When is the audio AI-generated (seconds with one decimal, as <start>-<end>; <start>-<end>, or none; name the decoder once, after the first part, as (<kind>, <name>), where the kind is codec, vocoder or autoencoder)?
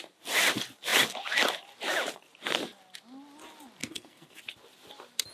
3.8-4.4 (codec, SNAC)